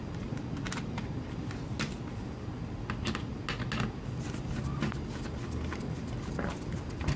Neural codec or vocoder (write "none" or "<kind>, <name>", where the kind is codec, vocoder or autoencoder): none